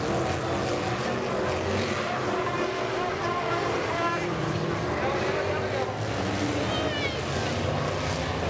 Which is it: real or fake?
real